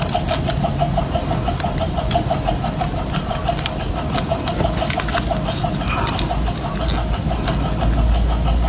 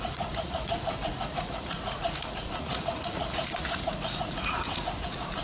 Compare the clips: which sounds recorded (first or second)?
first